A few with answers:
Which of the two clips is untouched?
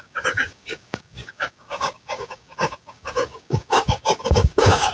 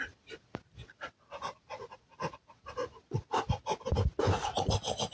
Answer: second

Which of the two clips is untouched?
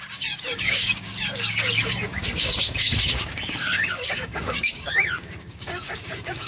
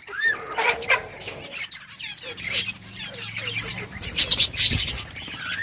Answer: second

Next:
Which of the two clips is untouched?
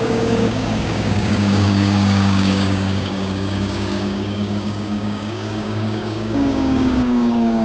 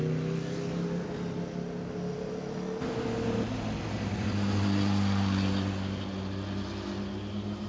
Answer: second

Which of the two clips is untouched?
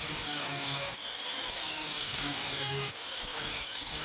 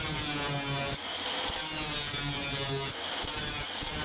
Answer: second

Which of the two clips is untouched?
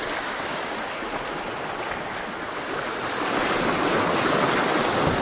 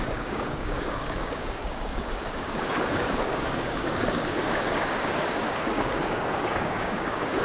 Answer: first